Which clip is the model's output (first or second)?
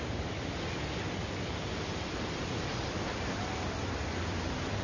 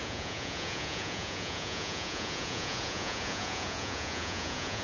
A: second